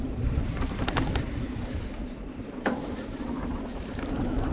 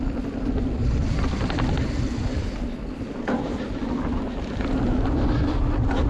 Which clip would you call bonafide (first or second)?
second